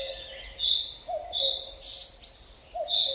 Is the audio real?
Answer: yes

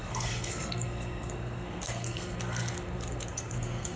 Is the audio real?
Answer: no